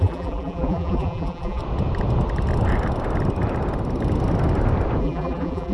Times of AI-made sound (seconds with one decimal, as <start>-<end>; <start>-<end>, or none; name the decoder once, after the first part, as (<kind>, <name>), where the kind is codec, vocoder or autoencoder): 0.0-1.6 (vocoder, BigVGAN v2); 5.0-5.7